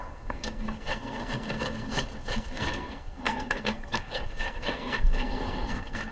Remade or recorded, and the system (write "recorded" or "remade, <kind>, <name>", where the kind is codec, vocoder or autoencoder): remade, codec, SNAC